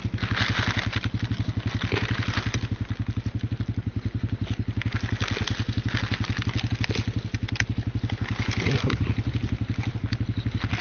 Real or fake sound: real